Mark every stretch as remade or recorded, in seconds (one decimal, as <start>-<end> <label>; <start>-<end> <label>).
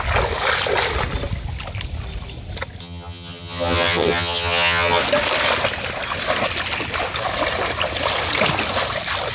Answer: 0.0-2.8 recorded; 2.8-5.0 remade; 5.0-9.3 recorded